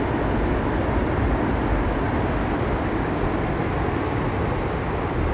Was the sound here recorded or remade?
recorded